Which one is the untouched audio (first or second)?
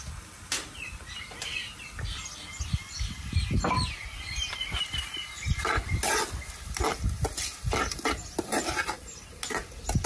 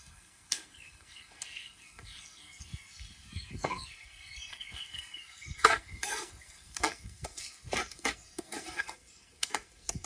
first